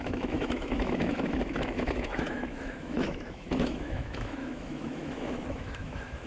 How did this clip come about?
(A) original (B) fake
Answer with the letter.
B